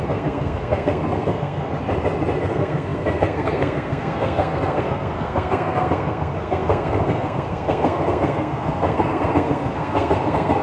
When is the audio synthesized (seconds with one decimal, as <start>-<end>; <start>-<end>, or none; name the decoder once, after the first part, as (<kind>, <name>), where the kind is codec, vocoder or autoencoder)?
0.0-1.7 (codec, SNAC); 2.4-10.6